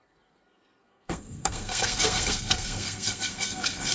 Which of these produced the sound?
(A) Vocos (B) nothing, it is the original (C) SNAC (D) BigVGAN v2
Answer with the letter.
C